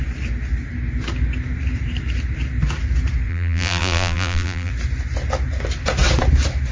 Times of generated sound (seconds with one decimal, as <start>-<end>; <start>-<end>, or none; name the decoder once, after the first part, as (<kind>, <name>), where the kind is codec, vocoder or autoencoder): 3.3-4.7 (vocoder, BigVGAN v2)